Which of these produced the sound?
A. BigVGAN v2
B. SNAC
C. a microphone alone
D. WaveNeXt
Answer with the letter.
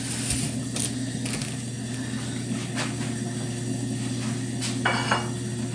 C